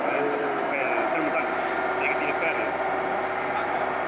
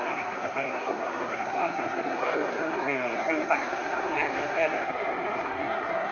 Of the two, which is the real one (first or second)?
first